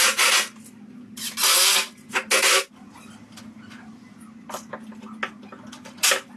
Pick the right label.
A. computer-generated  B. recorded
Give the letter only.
B